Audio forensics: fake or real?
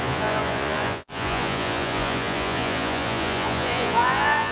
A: fake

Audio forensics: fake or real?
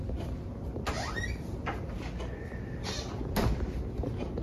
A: real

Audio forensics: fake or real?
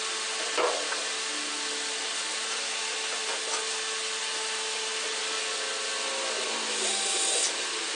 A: real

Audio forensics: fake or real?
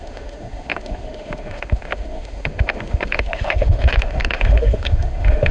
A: fake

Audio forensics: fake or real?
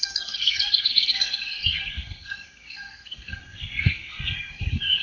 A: fake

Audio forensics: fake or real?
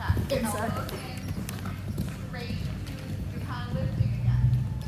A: real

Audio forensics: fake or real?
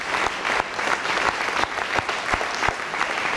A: real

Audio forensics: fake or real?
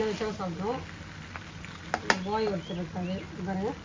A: real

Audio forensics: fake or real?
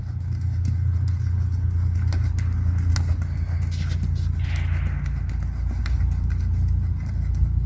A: real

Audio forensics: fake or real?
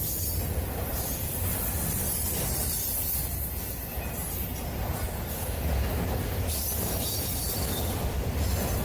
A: real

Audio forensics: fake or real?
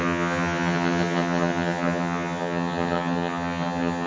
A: fake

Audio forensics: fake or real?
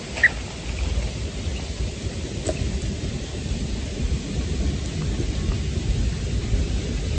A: real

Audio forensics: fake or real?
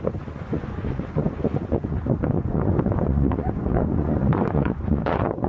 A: fake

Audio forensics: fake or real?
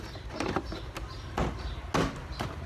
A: real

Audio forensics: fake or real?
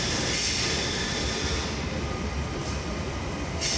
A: real